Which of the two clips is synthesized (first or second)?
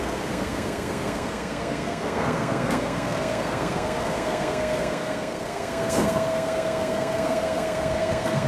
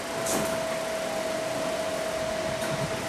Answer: first